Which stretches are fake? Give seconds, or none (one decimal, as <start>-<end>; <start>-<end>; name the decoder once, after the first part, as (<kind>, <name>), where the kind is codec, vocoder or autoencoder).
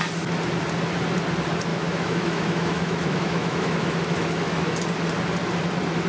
1.7-4.8 (autoencoder, DAC-VAE)